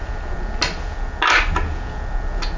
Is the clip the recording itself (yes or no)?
yes